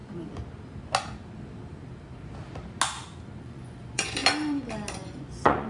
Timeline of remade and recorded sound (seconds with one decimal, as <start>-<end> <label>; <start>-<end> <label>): 0.0-3.4 recorded; 3.4-4.2 remade; 4.2-4.9 recorded; 4.9-5.7 remade